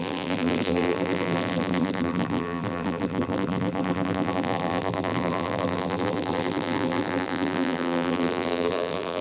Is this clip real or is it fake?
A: fake